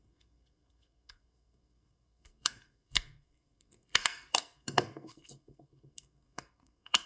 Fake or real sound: fake